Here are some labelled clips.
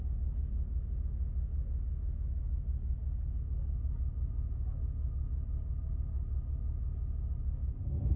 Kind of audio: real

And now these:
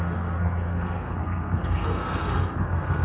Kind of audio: fake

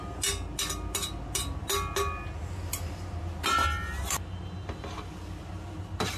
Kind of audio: real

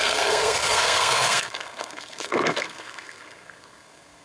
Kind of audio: fake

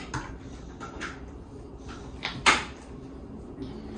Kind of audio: real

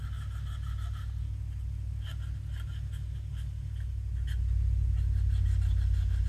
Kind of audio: real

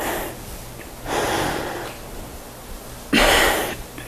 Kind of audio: real